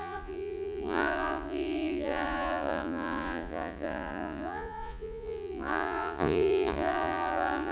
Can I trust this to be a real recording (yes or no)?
no